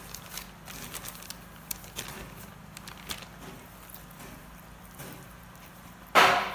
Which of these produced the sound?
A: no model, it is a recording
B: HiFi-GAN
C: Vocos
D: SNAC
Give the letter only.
A